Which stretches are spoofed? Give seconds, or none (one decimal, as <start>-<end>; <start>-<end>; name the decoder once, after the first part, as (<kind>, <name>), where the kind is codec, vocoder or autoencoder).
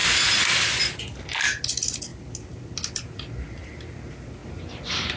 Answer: none